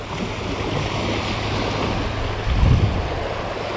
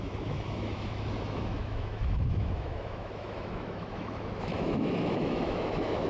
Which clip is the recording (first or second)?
first